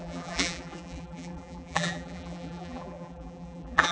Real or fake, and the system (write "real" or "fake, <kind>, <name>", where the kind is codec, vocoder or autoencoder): fake, vocoder, BigVGAN v2